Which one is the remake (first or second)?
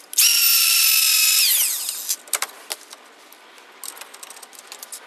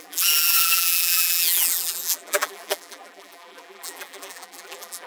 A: second